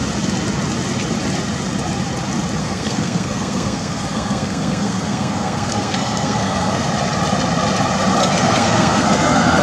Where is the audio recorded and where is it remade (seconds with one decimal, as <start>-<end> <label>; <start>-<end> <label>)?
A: 0.0-2.6 recorded; 2.6-6.9 remade; 6.9-8.2 recorded; 8.2-9.6 remade